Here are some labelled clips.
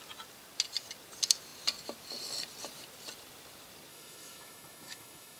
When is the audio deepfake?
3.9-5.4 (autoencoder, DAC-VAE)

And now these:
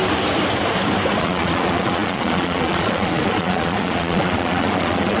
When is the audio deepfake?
1.2-5.2 (vocoder, Vocos)

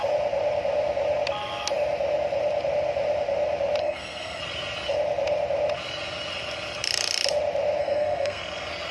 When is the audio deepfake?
3.8-4.4 (codec, SNAC); 7.8-8.4

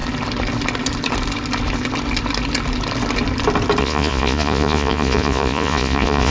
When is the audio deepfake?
3.8-6.3 (vocoder, Vocos)

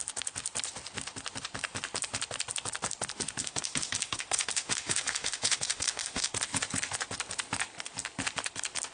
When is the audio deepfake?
3.4-6.3 (autoencoder, DAC-VAE)

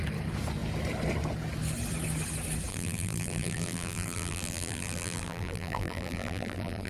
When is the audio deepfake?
2.7-6.9 (vocoder, BigVGAN v2)

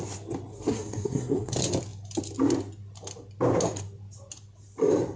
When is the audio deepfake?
0.5-1.5 (codec, SNAC)

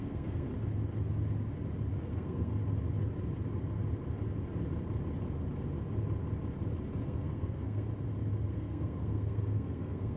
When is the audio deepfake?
0.0-0.5 (codec, SNAC); 2.1-2.5; 7.0-7.9; 8.5-10.2